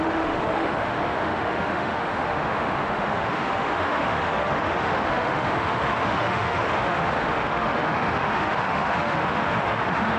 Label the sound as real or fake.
fake